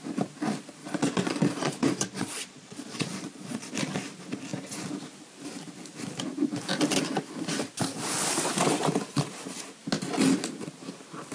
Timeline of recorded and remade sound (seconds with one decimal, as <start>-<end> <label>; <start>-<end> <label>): 0.0-0.8 recorded; 0.8-3.7 remade; 3.7-11.3 recorded